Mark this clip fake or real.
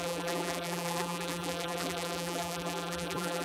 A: fake